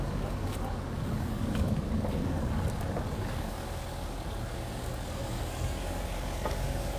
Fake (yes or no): yes